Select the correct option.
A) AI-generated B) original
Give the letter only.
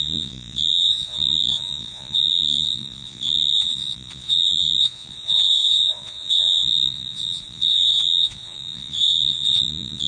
A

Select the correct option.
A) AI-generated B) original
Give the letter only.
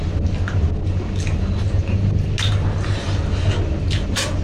B